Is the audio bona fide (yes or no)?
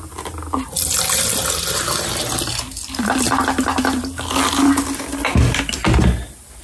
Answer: yes